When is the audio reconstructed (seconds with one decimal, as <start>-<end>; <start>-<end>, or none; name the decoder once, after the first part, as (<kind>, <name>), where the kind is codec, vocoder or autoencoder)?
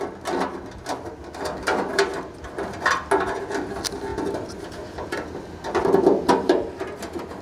4.1-6.8 (vocoder, BigVGAN v2)